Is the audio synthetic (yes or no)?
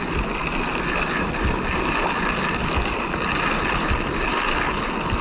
no